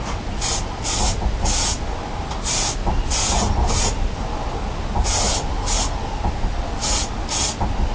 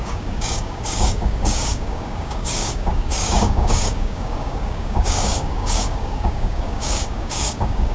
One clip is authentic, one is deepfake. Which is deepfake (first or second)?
second